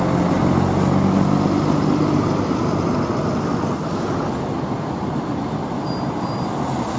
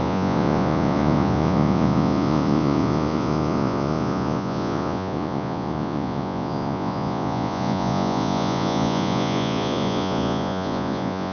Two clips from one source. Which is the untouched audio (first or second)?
first